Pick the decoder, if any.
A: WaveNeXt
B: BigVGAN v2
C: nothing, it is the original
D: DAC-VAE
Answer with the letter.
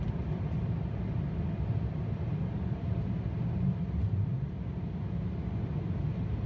C